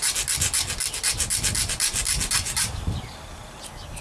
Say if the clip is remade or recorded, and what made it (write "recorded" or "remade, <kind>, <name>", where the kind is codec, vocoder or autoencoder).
recorded